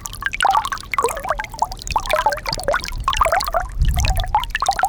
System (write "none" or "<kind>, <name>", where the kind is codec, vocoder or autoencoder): none